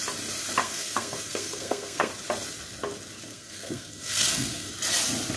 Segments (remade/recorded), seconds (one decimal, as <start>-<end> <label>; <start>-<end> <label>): 0.0-0.6 recorded; 0.6-2.1 remade; 2.1-3.3 recorded; 3.3-4.7 remade; 4.7-5.4 recorded